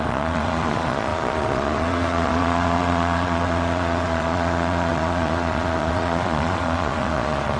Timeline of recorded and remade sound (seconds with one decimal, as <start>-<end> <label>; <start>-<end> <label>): 0.0-7.6 remade